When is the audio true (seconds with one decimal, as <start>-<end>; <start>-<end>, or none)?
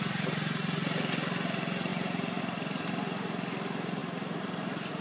0.0-5.0